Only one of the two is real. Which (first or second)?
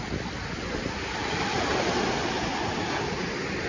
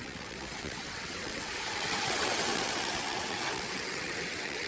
first